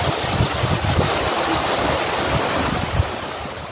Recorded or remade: recorded